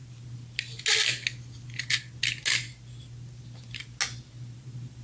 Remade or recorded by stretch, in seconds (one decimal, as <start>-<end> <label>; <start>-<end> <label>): 0.0-5.0 recorded